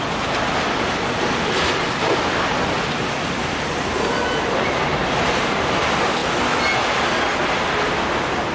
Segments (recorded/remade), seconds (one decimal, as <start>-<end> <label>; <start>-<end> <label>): 0.0-8.5 recorded

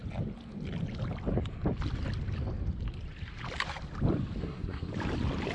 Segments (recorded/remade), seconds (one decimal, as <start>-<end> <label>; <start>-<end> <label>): 0.0-4.4 recorded; 4.4-4.9 remade; 4.9-5.5 recorded

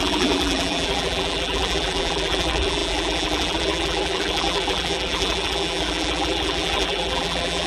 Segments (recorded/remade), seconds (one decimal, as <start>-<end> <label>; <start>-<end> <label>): 0.0-7.7 remade

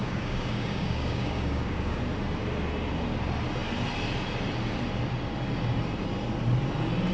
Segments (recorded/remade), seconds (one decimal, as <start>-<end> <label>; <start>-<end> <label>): 0.0-2.0 remade; 2.0-7.1 recorded